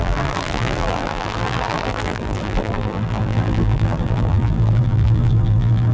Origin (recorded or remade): remade